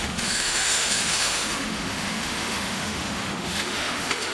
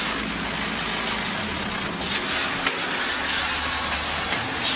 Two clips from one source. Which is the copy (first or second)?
first